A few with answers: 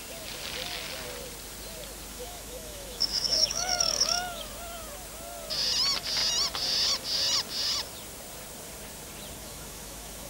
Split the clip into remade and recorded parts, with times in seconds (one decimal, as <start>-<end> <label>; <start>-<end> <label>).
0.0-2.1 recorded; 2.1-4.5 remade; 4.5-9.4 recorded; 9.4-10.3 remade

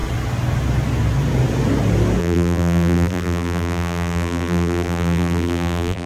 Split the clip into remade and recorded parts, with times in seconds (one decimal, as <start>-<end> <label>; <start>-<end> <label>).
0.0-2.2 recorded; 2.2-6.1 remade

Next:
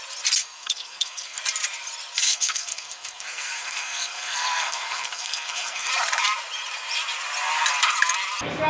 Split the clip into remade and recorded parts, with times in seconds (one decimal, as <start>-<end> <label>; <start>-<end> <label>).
0.0-0.4 recorded; 0.4-1.4 remade; 1.4-2.3 recorded; 2.3-5.9 remade; 5.9-8.7 recorded

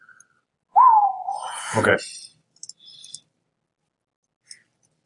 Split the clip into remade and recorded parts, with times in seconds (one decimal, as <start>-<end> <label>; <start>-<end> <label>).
0.0-0.7 recorded; 0.7-1.9 remade; 1.9-5.1 recorded